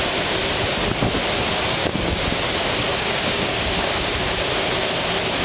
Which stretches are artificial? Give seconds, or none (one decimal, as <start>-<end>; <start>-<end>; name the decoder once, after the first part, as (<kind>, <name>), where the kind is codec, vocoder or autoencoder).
1.8-2.5 (codec, DAC); 2.9-3.9